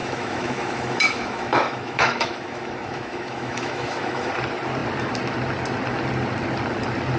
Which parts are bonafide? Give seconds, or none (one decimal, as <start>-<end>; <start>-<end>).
4.3-7.2